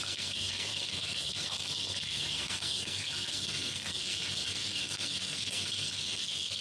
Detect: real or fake fake